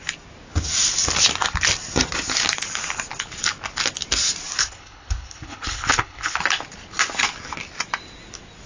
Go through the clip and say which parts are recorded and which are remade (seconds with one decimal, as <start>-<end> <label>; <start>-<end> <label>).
0.0-4.6 recorded; 4.6-6.4 remade; 6.4-8.7 recorded